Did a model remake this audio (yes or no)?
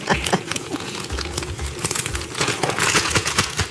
yes